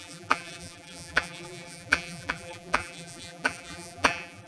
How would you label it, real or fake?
fake